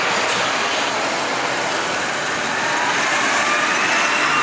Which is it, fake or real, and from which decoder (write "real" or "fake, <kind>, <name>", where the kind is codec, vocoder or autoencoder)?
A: real